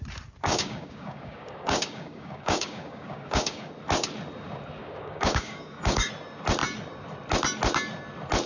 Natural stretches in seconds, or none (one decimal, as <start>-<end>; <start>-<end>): 0.0-0.4; 3.7-4.8; 6.1-8.5

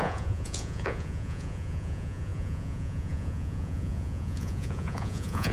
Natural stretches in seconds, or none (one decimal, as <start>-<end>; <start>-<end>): none